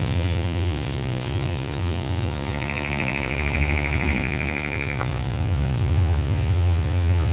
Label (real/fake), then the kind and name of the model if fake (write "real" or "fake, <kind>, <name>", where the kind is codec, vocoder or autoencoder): fake, vocoder, Vocos